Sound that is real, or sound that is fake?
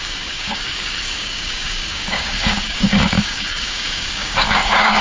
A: fake